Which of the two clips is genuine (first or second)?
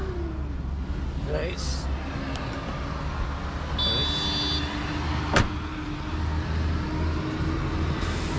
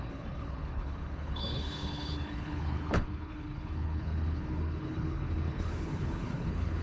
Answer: first